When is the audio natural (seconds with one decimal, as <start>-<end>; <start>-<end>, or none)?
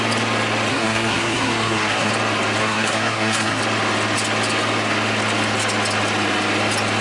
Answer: 0.0-0.7; 2.1-2.6; 3.6-7.0